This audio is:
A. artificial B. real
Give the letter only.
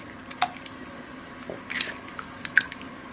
B